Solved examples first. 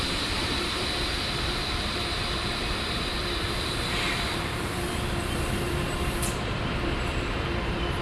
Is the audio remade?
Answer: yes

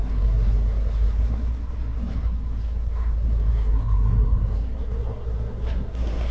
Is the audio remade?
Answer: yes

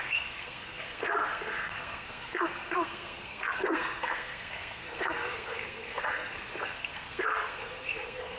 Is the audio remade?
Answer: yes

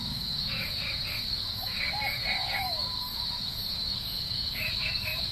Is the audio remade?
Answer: yes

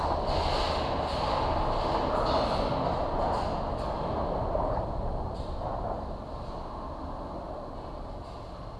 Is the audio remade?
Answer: no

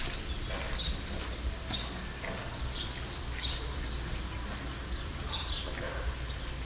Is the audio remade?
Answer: no